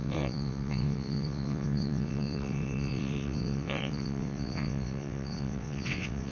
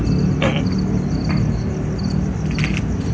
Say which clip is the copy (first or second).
first